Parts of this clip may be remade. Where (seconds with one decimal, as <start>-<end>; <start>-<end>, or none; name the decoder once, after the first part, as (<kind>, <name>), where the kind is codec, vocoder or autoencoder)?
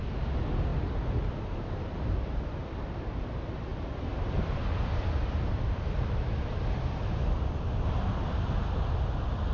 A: 3.7-7.4 (vocoder, BigVGAN v2)